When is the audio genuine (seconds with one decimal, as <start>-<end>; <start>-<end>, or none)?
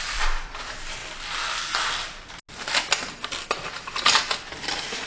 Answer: 0.0-5.1